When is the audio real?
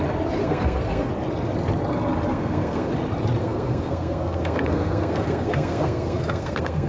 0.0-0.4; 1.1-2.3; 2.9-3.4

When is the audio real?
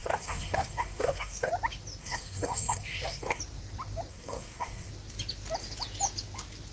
1.5-2.0; 3.4-4.1; 4.9-6.7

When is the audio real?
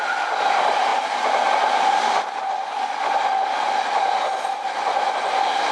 0.0-5.7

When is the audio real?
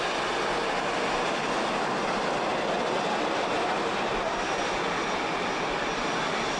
0.0-6.6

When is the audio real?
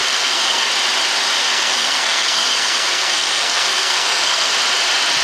0.7-1.4; 4.5-5.2